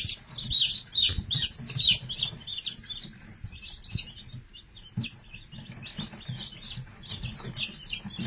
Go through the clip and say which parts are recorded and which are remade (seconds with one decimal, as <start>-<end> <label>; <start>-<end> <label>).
0.0-8.3 recorded